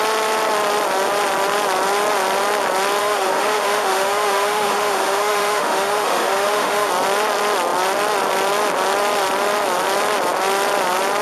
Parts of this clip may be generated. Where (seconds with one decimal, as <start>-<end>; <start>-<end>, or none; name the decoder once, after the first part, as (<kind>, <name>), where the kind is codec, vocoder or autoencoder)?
3.0-6.9 (autoencoder, DAC-VAE)